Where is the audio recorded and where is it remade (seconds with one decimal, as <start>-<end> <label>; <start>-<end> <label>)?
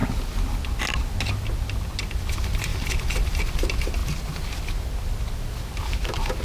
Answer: 0.0-2.7 recorded; 2.7-3.4 remade; 3.4-6.4 recorded